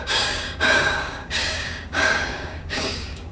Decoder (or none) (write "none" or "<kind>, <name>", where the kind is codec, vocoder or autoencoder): codec, DAC